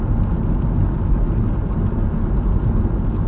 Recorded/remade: recorded